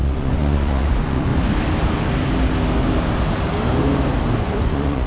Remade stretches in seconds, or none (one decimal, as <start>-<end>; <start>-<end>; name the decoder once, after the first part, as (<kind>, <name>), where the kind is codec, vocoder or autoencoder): 0.0-1.3 (vocoder, Vocos); 4.4-5.1